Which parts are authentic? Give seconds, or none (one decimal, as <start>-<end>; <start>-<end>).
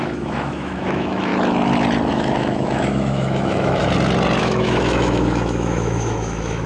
1.3-2.1; 3.8-4.4